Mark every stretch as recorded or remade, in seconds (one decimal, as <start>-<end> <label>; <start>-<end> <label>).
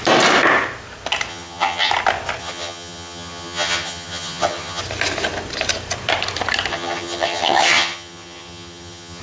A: 0.0-1.3 recorded; 1.3-1.9 remade; 1.9-2.4 recorded; 2.4-4.8 remade; 4.8-6.7 recorded; 6.7-9.2 remade